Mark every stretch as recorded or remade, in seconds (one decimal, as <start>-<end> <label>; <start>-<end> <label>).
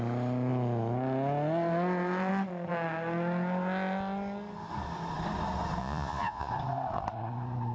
0.0-5.8 recorded; 5.8-6.5 remade; 6.5-7.7 recorded